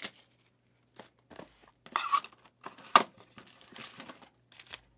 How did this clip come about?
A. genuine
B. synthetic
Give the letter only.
A